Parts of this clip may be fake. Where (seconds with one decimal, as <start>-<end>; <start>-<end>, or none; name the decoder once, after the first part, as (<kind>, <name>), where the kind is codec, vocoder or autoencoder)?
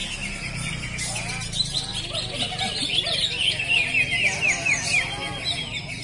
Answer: none